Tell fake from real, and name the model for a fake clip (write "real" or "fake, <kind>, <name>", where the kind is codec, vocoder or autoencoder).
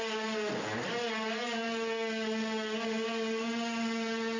real